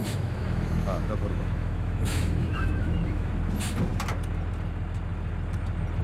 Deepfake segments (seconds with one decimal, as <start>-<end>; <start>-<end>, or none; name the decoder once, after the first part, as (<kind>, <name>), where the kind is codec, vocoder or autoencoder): 0.0-3.3 (autoencoder, DAC-VAE)